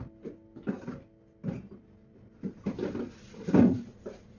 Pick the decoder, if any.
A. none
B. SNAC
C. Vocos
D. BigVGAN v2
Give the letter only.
A